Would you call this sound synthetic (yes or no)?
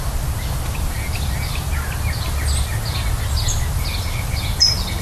no